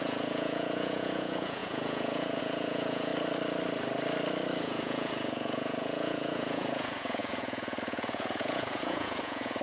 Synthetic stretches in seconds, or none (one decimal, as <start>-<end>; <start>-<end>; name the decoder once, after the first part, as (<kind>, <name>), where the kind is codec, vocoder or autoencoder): 0.0-3.1 (vocoder, Vocos); 4.6-9.6

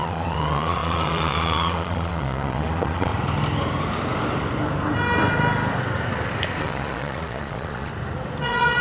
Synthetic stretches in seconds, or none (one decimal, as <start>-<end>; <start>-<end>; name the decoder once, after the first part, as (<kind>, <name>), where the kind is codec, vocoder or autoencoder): 0.0-3.1 (vocoder, Vocos); 6.6-7.9; 8.4-8.8

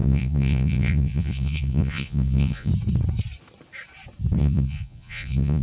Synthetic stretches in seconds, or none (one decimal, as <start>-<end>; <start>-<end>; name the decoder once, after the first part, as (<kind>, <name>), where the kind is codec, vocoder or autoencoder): 0.0-2.7 (vocoder, Vocos); 4.4-5.6

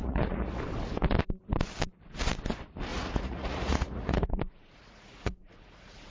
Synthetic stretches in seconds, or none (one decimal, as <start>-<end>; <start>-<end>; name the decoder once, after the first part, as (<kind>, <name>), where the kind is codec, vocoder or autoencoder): 0.0-0.6 (vocoder, Vocos); 2.9-6.1

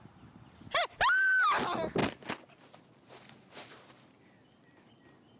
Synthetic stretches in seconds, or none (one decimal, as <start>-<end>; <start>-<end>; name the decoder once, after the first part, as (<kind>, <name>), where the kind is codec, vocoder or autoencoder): none

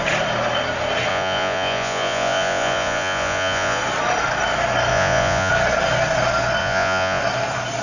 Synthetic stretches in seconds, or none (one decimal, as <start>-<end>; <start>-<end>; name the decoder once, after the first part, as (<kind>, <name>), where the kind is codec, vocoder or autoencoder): 1.1-3.8 (vocoder, Vocos); 4.9-5.5; 6.6-7.2